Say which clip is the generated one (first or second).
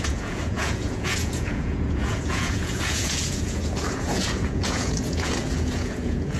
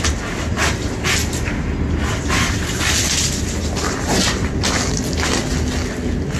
first